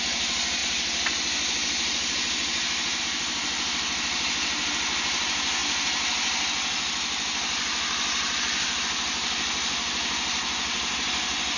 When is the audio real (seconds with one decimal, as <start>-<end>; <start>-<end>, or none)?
0.0-11.6